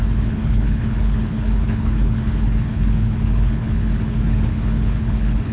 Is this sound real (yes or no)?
no